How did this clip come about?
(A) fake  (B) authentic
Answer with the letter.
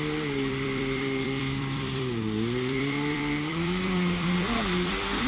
A